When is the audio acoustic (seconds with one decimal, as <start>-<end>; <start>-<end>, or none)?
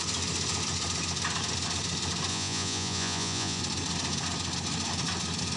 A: 0.0-2.3; 3.6-5.6